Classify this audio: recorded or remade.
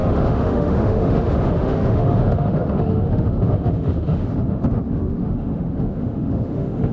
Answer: remade